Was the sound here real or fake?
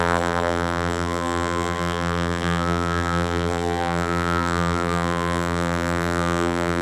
fake